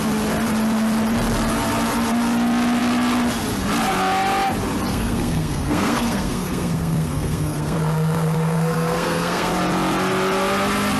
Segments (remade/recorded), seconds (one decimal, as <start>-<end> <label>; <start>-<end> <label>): 0.0-4.9 recorded; 4.9-9.5 remade; 9.5-11.0 recorded